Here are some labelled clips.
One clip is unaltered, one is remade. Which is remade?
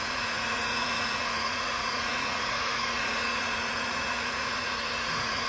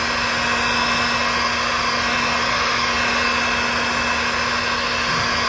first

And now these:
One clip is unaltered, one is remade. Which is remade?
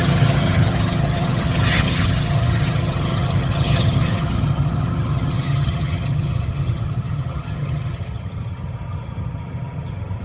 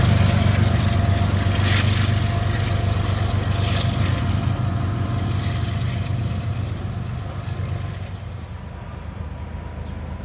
first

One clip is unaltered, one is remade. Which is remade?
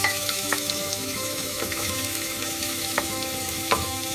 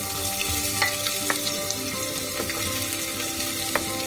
first